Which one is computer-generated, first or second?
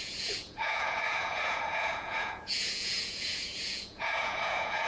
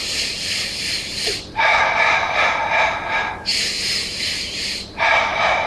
first